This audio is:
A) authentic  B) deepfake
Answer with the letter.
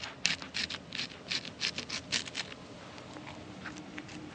A